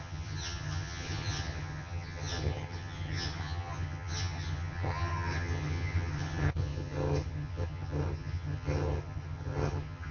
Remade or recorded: remade